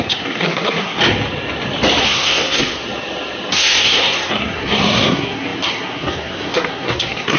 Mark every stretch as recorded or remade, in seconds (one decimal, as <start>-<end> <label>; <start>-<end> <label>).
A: 0.0-1.0 remade; 1.0-2.0 recorded; 2.0-2.8 remade; 2.8-3.5 recorded; 3.5-7.4 remade